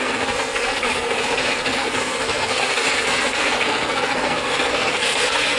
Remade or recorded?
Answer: remade